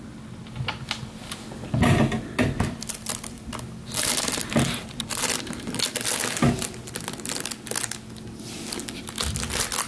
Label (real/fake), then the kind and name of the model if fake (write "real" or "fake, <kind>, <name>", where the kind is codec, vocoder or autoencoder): real